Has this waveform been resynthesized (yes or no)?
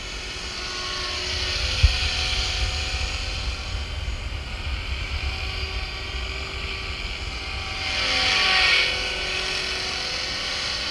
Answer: no